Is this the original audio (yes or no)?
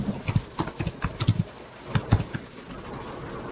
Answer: yes